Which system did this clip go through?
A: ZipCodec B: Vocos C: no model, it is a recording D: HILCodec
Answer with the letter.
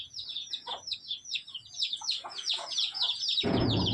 B